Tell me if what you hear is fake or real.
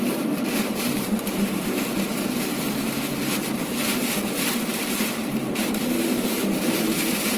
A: fake